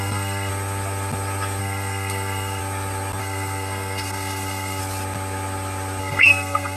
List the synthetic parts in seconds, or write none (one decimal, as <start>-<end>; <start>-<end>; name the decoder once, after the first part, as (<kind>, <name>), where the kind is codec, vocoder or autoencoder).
0.0-0.5 (codec, SNAC); 1.6-2.6; 3.2-4.8; 6.0-6.8

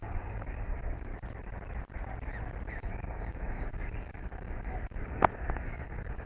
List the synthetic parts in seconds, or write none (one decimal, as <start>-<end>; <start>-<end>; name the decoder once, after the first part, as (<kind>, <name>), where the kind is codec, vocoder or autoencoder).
0.0-1.1 (codec, DAC); 2.7-6.3

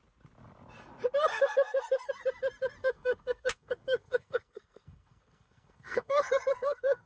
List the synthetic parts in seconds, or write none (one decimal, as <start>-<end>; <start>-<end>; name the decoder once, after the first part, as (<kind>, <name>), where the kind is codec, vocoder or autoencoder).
1.3-2.1 (codec, SNAC); 2.8-7.1

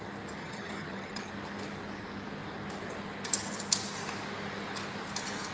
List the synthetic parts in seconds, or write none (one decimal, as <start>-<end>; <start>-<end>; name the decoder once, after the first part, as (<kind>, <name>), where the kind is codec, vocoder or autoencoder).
0.4-1.3 (vocoder, HiFi-GAN)

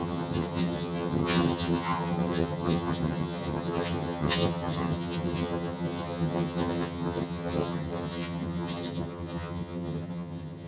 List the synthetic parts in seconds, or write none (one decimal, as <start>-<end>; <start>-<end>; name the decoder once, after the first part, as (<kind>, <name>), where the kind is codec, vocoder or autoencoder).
0.0-10.7 (vocoder, HiFi-GAN)

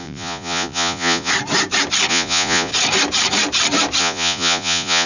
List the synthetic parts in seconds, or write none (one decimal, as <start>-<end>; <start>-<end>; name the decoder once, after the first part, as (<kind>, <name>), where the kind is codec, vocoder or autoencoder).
0.0-1.3 (vocoder, Vocos); 2.1-2.7; 4.0-5.1

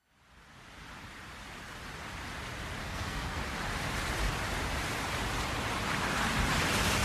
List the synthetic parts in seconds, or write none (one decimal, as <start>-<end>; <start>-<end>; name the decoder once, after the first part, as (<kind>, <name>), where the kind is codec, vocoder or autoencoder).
2.8-3.4 (codec, SNAC)